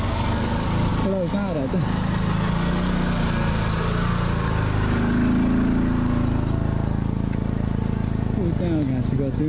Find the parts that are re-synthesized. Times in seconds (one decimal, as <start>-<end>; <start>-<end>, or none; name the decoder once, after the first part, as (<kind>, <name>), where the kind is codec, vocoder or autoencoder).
none